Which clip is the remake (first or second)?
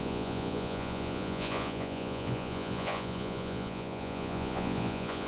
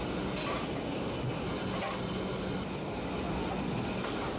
first